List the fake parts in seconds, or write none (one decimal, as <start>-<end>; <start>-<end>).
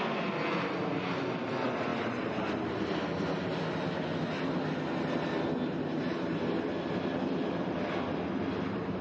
none